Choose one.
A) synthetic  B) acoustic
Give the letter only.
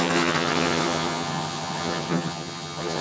A